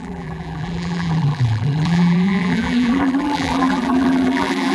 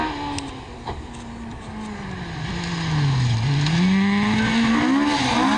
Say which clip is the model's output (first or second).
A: first